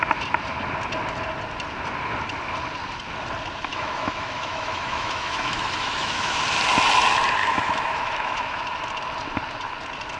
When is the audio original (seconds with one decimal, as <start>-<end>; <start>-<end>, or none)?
0.0-3.7; 6.4-7.4; 8.6-10.2